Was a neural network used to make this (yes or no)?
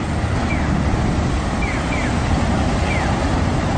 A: no